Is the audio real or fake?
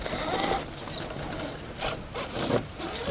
real